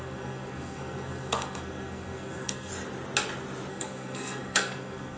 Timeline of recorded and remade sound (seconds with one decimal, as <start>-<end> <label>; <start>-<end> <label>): 0.0-2.7 remade; 2.7-3.7 recorded; 3.7-5.2 remade

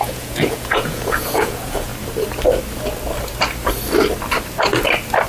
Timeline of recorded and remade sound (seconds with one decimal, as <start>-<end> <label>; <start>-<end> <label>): 0.0-1.9 remade; 1.9-5.3 recorded

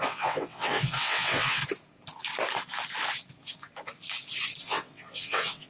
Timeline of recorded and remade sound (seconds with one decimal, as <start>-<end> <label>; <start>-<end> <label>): 0.0-1.6 remade; 1.6-4.6 recorded; 4.6-5.7 remade

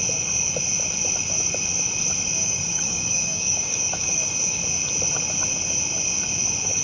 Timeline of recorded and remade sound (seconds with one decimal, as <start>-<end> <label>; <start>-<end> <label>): 0.0-2.4 recorded; 2.4-4.6 remade; 4.6-6.8 recorded

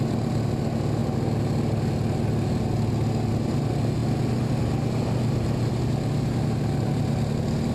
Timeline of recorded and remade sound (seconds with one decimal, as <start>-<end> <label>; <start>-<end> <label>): 0.0-7.7 recorded

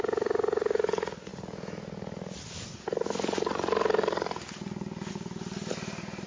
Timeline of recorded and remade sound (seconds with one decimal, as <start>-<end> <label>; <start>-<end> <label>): 0.0-6.3 recorded

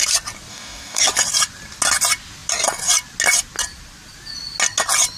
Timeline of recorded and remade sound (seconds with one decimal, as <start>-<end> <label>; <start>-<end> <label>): 0.0-0.5 recorded; 0.5-1.0 remade; 1.0-5.2 recorded